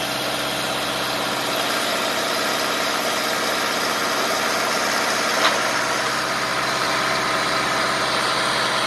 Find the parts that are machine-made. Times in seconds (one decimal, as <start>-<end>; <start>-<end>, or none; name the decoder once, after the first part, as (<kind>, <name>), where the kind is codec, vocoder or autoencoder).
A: 6.5-7.3 (vocoder, BigVGAN v2)